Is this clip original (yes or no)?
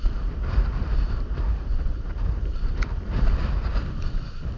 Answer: yes